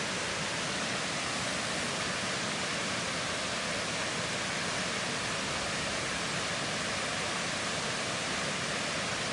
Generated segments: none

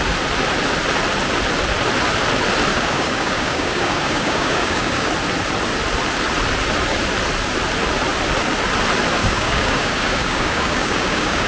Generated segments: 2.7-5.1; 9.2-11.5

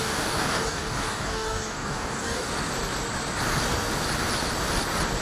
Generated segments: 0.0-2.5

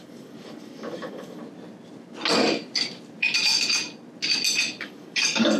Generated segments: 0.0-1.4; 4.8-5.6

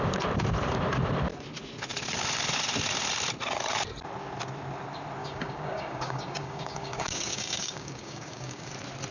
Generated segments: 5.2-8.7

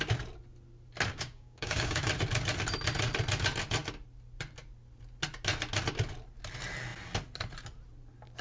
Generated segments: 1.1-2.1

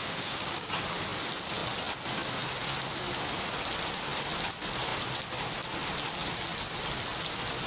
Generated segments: 0.0-0.7